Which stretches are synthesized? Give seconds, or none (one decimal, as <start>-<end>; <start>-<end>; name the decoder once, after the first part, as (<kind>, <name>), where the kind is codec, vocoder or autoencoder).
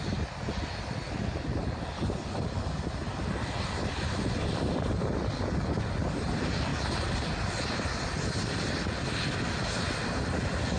none